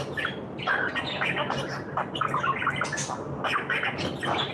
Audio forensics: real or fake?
real